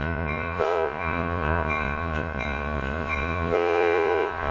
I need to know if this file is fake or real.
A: fake